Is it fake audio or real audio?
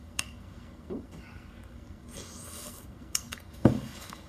fake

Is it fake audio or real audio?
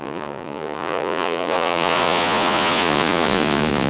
fake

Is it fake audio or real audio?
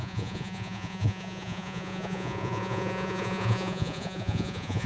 fake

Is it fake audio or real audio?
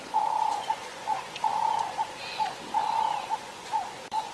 fake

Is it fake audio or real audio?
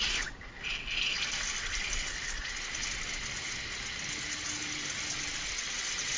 real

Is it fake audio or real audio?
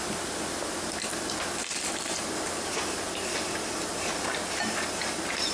real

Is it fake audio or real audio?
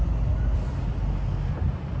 real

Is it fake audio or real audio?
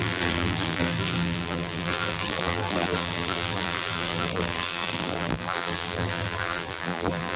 fake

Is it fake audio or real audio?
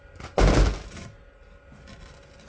real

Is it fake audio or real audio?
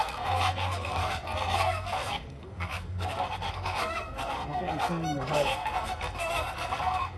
fake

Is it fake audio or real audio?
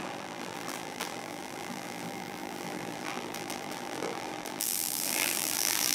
fake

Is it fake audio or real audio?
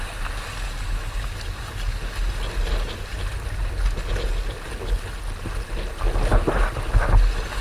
real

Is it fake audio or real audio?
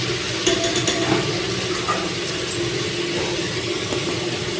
real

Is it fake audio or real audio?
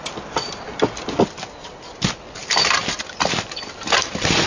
real